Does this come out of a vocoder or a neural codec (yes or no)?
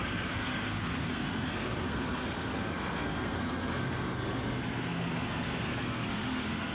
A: yes